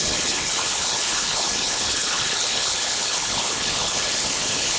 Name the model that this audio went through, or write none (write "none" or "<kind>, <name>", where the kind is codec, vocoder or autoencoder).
codec, HILCodec